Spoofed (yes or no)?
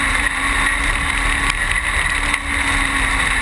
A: no